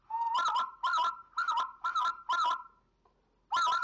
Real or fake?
real